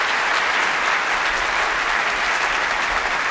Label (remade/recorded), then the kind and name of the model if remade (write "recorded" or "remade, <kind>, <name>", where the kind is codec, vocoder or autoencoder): recorded